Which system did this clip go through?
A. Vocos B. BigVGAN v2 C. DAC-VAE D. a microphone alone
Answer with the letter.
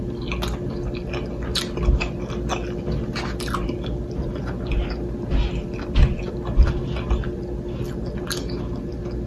D